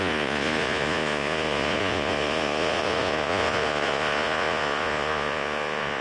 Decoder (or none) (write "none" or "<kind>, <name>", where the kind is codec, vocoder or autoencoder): vocoder, Vocos